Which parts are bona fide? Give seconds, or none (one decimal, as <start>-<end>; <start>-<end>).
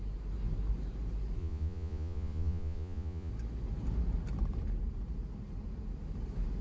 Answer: 0.0-1.4; 3.3-6.6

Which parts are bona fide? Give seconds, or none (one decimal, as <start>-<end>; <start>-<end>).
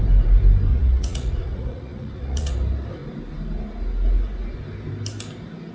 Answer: 0.0-0.7; 2.5-5.7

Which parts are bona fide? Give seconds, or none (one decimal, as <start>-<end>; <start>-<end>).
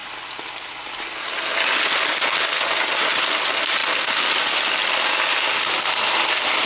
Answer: 0.0-6.6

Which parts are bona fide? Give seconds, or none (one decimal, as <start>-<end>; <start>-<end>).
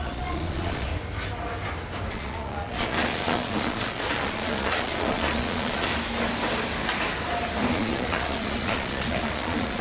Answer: 0.9-2.1; 5.9-7.7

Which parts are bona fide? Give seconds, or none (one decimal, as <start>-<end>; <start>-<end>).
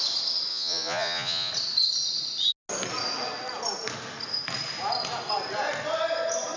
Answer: 0.0-0.5; 1.5-6.6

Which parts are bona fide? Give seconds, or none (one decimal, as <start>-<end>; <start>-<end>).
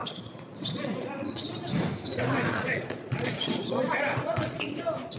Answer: 1.7-2.5; 4.8-5.2